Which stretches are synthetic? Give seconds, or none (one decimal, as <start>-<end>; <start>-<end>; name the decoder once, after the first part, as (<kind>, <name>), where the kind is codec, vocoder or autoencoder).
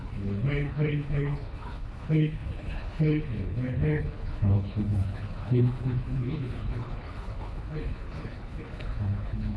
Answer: 0.0-9.6 (codec, HILCodec)